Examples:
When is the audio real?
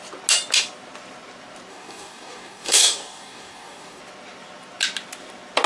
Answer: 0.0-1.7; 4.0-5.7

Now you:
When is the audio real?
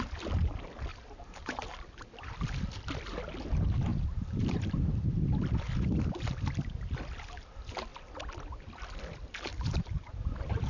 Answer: 0.0-0.9; 1.9-3.9; 5.1-9.5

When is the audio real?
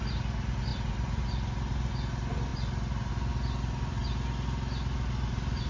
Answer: 0.0-0.7; 1.2-5.7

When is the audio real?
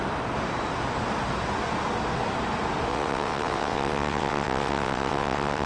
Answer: 0.0-2.9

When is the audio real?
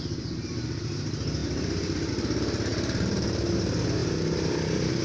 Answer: 0.0-5.0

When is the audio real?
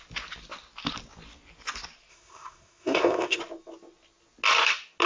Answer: 0.0-2.1; 3.4-5.1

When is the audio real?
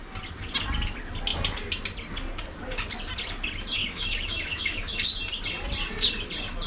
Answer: 0.0-3.8; 5.0-6.7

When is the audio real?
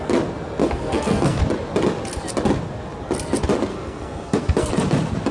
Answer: 0.0-0.6; 1.4-3.7; 4.7-5.3